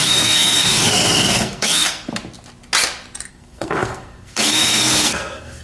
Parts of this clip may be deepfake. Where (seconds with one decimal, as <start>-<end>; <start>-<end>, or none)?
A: 0.0-2.1; 3.3-5.6